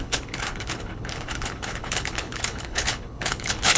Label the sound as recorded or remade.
remade